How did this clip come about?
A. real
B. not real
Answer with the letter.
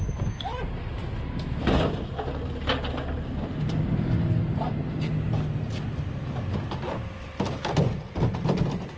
A